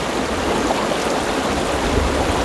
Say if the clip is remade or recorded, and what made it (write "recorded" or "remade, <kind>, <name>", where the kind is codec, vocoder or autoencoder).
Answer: recorded